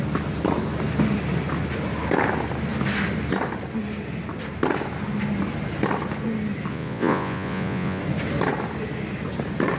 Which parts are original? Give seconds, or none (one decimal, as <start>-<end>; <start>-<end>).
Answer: 0.0-6.7; 8.0-9.8